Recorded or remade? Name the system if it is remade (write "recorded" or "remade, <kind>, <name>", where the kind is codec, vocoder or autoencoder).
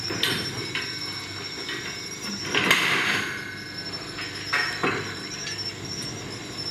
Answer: recorded